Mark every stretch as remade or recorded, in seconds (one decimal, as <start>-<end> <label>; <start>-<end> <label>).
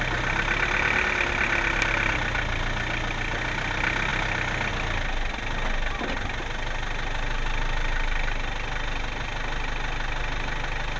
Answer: 0.0-11.0 recorded